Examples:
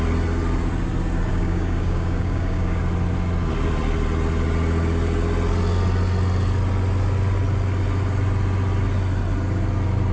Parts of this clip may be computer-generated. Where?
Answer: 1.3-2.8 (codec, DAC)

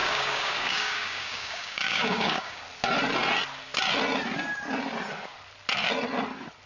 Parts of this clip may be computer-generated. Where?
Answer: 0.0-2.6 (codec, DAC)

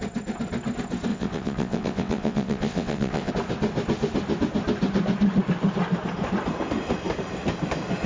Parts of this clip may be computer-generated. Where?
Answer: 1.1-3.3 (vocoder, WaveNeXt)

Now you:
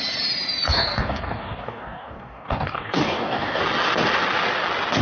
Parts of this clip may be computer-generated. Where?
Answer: 0.7-3.6 (codec, DAC)

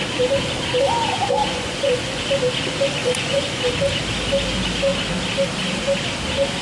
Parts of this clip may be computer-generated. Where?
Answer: 1.4-2.2 (vocoder, Vocos); 3.0-3.6

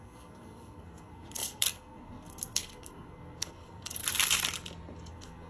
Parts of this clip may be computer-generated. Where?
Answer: 0.0-4.0 (codec, SNAC); 5.1-5.5

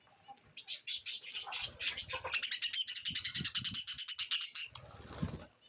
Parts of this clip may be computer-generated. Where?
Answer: none